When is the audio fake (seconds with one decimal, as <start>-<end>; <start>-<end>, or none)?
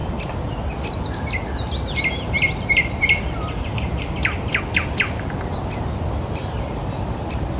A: none